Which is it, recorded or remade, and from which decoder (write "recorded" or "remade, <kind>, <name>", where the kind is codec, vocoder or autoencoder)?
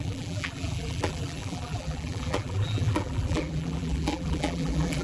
remade, vocoder, BigVGAN v2